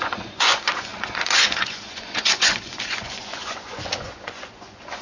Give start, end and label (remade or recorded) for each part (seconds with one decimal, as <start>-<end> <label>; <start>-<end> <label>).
0.0-5.0 remade